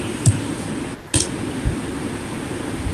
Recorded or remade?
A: recorded